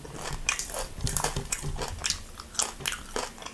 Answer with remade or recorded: recorded